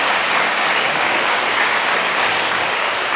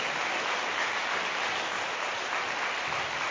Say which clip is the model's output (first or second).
first